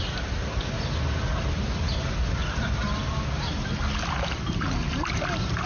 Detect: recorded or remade recorded